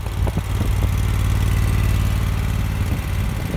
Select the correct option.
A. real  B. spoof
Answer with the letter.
A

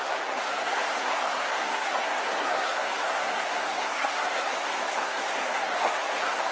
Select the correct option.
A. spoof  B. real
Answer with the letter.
A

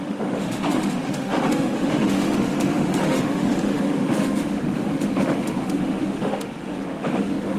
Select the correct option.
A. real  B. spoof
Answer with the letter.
B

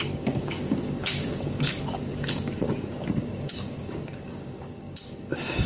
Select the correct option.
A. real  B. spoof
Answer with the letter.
B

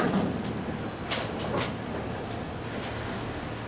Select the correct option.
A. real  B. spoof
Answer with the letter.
A